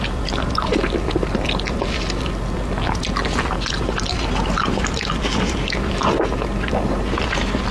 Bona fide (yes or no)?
yes